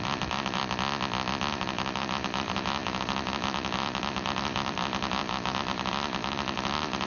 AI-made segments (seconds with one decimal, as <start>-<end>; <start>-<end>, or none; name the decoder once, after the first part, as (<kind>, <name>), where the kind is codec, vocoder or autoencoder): 0.0-0.6 (vocoder, BigVGAN v2); 1.5-7.1